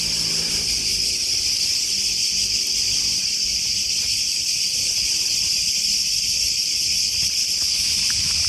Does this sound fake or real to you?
real